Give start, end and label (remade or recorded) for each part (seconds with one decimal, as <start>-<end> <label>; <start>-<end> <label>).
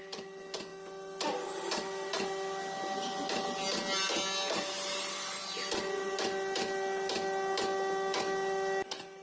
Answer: 0.0-9.2 recorded